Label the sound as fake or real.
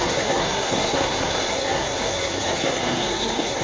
fake